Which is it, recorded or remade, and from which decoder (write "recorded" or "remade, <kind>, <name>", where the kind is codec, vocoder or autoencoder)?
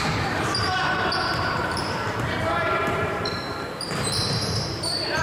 remade, vocoder, BigVGAN v2